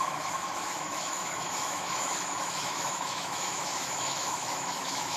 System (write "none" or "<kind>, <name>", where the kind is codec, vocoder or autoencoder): autoencoder, DAC-VAE